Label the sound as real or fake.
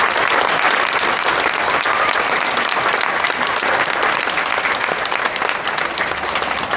fake